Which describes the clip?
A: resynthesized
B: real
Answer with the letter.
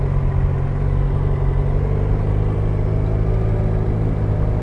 B